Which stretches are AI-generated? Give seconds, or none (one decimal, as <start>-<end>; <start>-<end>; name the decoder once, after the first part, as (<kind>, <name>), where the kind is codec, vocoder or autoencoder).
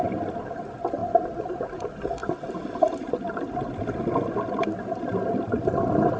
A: none